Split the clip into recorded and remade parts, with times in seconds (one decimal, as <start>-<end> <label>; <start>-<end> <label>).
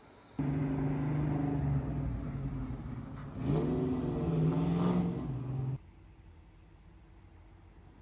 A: 0.0-8.0 recorded